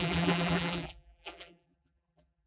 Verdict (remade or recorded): remade